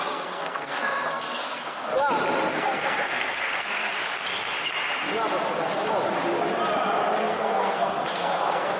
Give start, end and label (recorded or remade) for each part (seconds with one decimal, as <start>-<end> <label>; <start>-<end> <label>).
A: 0.0-1.9 remade; 1.9-2.5 recorded; 2.5-3.9 remade; 3.9-7.2 recorded; 7.2-8.8 remade